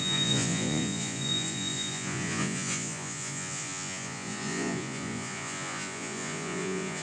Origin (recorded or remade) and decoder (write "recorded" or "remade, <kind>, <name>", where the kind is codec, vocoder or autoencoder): remade, vocoder, Vocos